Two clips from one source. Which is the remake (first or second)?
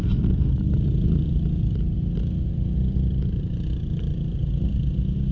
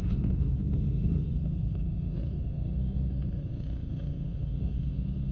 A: second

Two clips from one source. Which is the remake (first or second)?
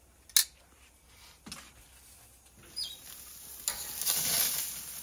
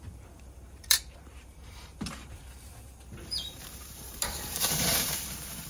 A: second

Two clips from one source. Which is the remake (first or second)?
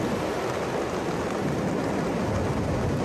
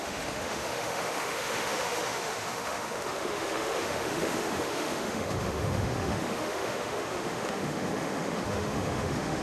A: second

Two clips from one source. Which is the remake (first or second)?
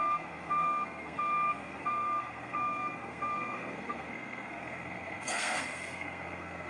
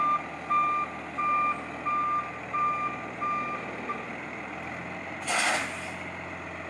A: first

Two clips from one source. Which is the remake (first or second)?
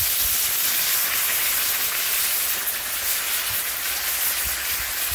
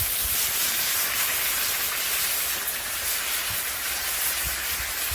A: second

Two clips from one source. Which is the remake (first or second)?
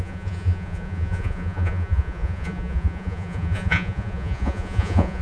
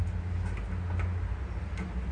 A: first